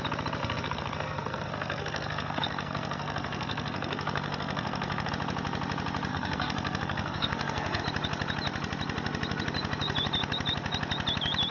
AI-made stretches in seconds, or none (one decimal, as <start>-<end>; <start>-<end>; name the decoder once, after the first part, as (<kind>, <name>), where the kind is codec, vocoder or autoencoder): 0.4-5.1 (codec, SNAC); 6.1-7.8